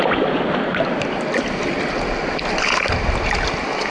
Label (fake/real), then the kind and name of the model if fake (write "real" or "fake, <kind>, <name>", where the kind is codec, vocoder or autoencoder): real